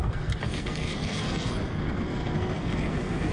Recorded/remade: remade